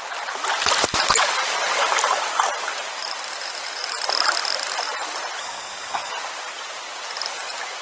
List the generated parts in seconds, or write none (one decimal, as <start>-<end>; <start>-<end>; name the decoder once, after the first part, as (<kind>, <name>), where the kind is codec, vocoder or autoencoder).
5.4-6.1 (codec, DAC)